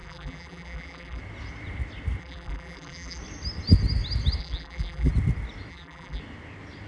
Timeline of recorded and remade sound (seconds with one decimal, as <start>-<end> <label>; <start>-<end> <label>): 0.0-1.2 remade; 1.2-2.2 recorded; 2.2-3.2 remade; 3.2-4.4 recorded; 4.4-5.1 remade; 5.1-5.7 recorded; 5.7-6.2 remade; 6.2-6.9 recorded